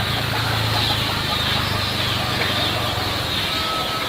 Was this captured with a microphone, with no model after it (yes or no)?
yes